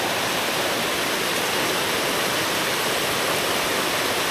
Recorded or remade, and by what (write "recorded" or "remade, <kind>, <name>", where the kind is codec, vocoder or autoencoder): recorded